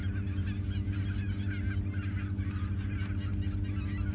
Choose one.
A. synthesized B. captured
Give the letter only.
B